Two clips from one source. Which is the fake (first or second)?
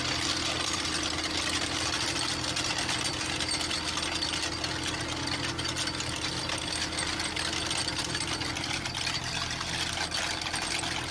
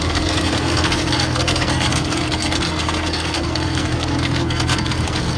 second